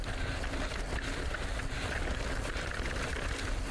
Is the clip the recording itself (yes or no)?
yes